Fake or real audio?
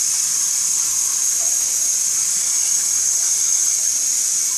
real